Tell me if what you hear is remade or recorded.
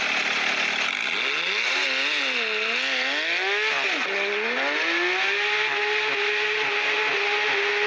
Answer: recorded